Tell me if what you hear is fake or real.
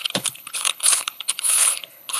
fake